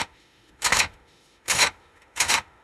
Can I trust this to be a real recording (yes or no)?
no